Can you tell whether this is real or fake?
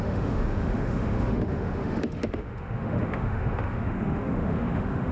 fake